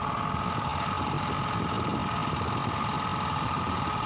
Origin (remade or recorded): recorded